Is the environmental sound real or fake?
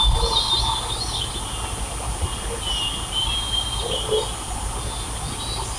real